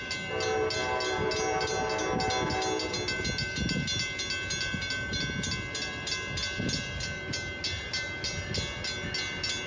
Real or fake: real